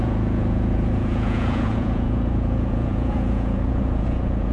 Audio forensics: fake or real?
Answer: fake